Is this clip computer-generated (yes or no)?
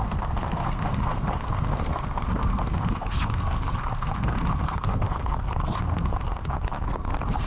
yes